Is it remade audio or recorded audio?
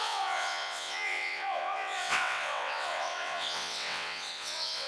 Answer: remade